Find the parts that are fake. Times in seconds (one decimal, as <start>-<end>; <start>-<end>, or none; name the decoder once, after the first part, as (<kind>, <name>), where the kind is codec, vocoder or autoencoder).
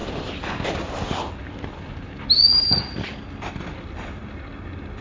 none